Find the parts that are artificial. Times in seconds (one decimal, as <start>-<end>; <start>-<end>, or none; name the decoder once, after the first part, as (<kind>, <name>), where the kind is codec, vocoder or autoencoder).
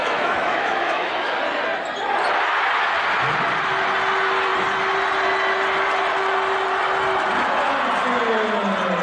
0.0-1.4 (autoencoder, DAC-VAE)